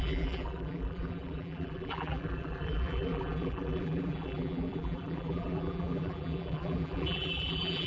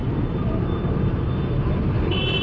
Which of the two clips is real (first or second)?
second